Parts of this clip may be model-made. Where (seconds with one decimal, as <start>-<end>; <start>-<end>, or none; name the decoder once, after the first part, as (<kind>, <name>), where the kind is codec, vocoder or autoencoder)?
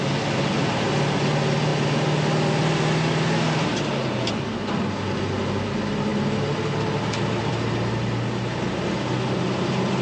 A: none